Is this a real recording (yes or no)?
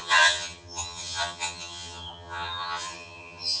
no